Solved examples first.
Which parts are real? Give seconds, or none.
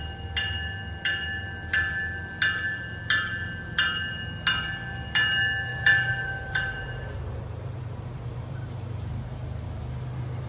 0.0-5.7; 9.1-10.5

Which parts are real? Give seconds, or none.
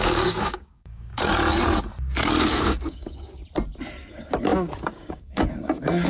1.1-2.4; 3.4-4.1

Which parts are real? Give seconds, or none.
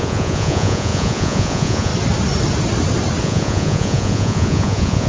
1.9-3.2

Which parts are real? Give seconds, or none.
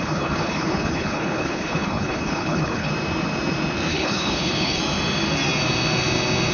2.9-3.9; 4.8-6.5